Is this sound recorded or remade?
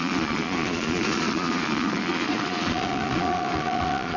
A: remade